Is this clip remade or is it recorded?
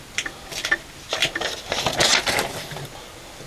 recorded